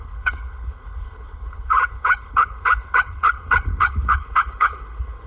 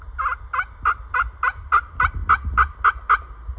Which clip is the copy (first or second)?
first